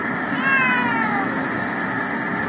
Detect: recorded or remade recorded